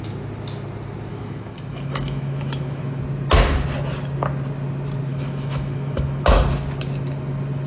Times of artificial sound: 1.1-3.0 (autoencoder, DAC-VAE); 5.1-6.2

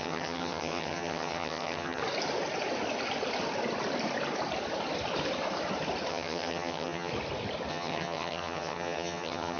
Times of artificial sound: 0.0-2.0 (vocoder, HiFi-GAN); 6.1-7.1; 7.7-9.6